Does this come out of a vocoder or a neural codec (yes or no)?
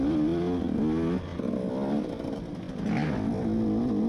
no